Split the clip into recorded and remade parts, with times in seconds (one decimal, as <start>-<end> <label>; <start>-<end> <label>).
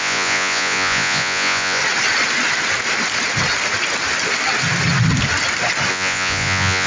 0.0-1.8 remade; 1.8-5.9 recorded; 5.9-6.9 remade